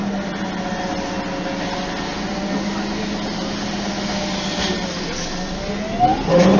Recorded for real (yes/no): yes